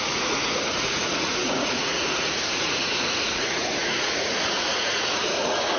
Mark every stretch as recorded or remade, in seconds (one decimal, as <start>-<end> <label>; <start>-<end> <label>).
0.0-5.8 remade